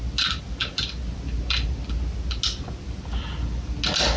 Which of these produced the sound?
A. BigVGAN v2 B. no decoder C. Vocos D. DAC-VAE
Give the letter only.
B